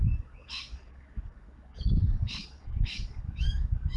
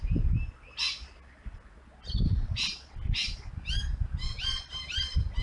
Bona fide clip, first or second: second